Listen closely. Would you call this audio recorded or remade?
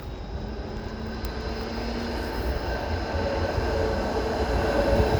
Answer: recorded